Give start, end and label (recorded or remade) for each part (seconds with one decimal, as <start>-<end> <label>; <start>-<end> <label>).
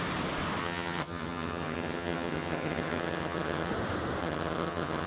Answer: 0.0-0.6 recorded; 0.6-3.7 remade; 3.7-4.2 recorded; 4.2-5.1 remade